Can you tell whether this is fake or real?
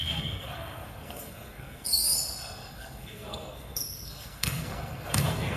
fake